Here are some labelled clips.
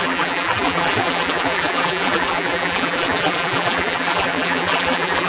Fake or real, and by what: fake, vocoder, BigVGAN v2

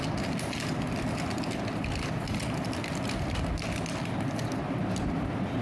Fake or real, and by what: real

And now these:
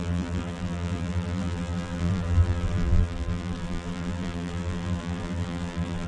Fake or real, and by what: fake, vocoder, BigVGAN v2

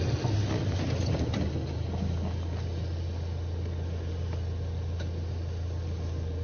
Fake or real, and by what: real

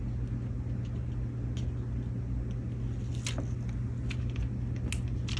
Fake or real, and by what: real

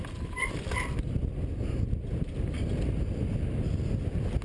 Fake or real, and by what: real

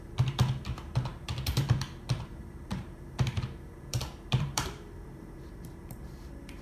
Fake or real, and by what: fake, vocoder, BigVGAN v2